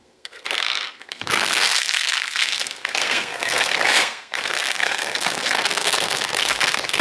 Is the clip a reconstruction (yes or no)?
yes